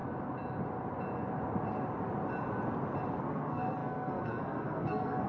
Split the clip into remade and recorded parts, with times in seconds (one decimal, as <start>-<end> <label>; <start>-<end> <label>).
0.0-3.2 recorded; 3.2-5.3 remade